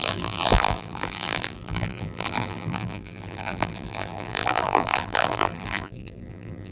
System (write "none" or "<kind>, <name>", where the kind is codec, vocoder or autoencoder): vocoder, BigVGAN v2